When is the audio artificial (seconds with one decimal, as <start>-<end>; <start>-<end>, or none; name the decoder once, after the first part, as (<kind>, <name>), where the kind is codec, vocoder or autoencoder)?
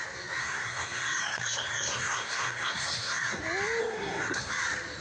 0.4-3.4 (codec, SNAC); 3.8-4.5